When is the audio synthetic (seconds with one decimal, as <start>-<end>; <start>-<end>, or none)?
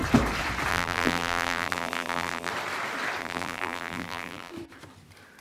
0.7-2.5; 3.2-4.5